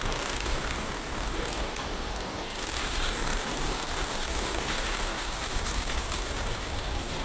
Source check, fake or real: fake